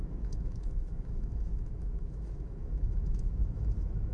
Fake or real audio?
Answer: fake